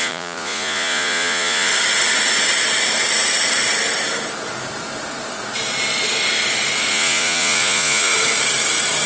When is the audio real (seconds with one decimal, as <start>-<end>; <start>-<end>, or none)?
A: 1.7-6.9; 8.1-9.1